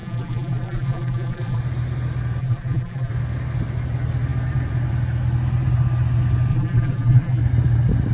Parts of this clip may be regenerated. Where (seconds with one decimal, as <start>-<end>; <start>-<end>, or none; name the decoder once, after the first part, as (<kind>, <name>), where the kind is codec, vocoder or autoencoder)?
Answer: 0.0-1.6 (vocoder, BigVGAN v2); 2.4-3.1; 6.5-7.4